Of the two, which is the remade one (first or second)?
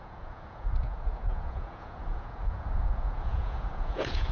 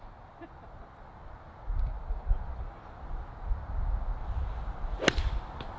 first